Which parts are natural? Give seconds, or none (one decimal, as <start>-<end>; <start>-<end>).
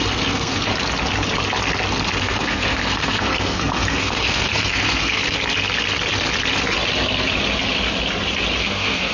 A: 0.7-2.2; 5.2-8.6